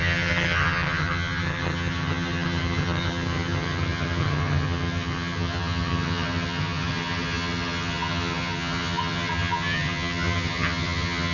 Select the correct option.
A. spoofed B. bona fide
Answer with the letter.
A